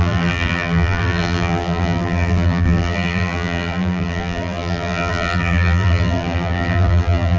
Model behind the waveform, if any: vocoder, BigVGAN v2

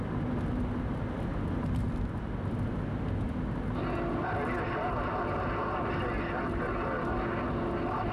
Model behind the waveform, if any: none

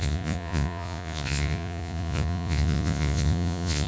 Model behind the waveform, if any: vocoder, Vocos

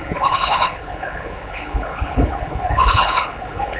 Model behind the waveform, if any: codec, HILCodec